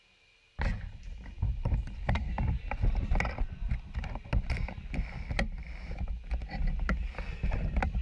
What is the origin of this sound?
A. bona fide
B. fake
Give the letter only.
A